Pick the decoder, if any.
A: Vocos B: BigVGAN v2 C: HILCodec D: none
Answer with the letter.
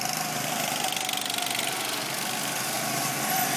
D